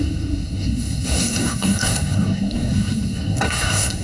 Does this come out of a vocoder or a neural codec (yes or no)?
yes